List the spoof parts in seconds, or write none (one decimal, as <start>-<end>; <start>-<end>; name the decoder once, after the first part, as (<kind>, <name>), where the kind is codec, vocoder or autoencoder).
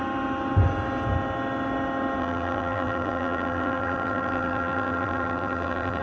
2.2-6.0 (vocoder, BigVGAN v2)